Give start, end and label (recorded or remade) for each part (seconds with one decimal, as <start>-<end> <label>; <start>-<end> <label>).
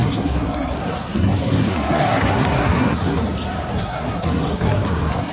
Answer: 0.0-3.2 remade; 3.2-3.7 recorded; 3.7-5.3 remade